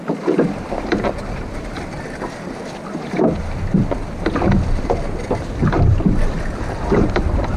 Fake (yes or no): no